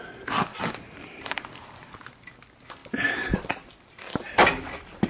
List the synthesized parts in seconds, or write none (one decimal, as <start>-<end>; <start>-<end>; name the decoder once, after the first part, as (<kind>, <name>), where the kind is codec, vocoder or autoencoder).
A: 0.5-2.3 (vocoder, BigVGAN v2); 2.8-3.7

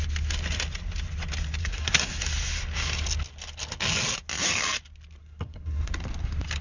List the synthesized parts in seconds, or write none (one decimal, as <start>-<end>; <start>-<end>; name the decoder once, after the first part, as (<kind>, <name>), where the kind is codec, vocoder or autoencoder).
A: 1.6-2.2 (codec, SNAC); 5.2-5.9

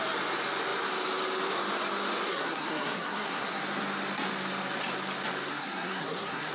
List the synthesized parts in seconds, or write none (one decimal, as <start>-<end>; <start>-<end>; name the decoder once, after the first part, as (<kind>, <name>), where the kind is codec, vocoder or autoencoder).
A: 2.3-3.6 (codec, SNAC); 5.5-6.5